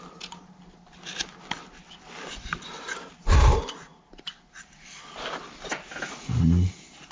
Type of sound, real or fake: real